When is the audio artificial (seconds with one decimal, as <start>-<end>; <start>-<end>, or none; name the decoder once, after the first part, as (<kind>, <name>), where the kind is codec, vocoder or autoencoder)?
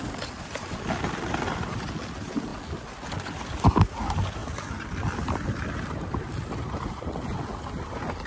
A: none